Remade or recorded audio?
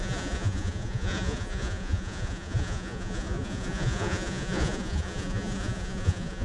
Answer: remade